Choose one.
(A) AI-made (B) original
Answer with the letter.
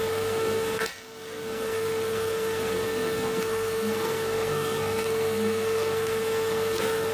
A